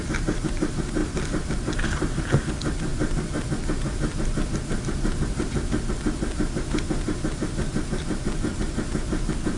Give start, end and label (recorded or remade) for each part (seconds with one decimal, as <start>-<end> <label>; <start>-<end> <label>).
0.0-9.6 recorded